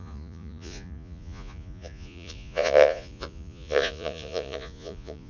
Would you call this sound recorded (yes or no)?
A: no